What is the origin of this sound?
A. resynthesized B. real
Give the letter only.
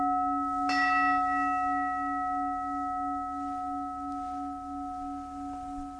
B